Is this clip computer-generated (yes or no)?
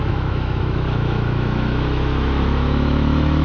yes